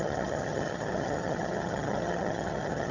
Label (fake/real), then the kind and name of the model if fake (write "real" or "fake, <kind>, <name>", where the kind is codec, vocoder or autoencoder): fake, vocoder, HiFi-GAN